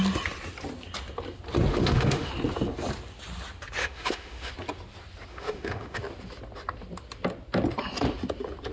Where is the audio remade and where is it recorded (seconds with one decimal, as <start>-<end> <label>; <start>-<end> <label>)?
0.0-1.7 recorded; 1.7-2.3 remade; 2.3-3.8 recorded; 3.8-4.5 remade; 4.5-5.3 recorded; 5.3-6.0 remade; 6.0-8.7 recorded